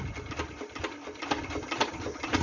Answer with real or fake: real